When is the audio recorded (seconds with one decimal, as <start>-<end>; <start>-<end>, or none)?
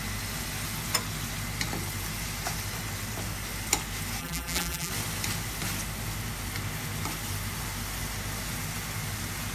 0.0-4.2; 4.9-9.5